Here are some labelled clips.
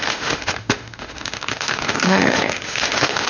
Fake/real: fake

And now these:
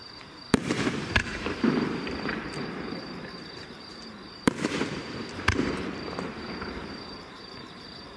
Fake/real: fake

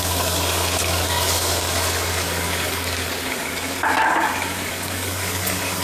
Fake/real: fake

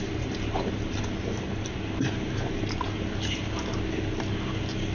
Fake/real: real